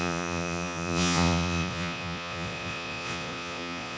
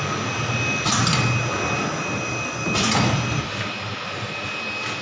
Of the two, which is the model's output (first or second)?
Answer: first